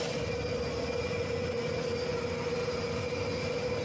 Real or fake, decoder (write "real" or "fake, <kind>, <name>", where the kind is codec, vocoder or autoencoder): real